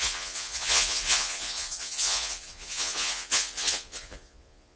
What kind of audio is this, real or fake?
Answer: fake